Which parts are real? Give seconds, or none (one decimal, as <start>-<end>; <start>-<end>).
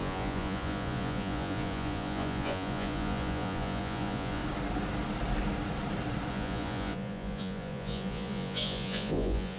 4.4-6.3